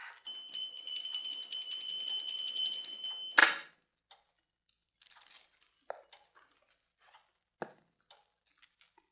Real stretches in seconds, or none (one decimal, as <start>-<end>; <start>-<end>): 0.0-9.1